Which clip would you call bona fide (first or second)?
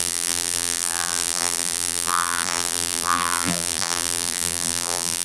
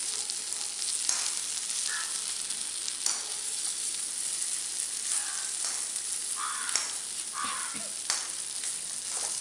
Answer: second